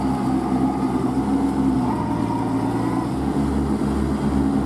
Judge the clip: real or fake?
real